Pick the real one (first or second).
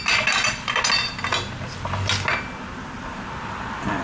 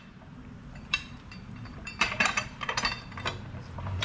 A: first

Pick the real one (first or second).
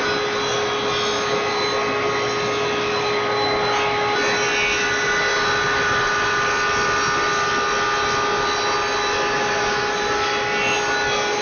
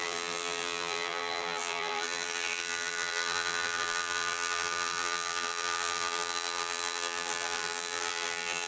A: first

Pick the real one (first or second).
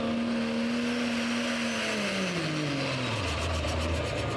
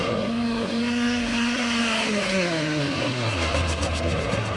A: first